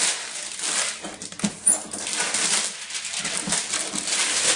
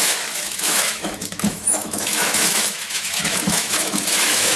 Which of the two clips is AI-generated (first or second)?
second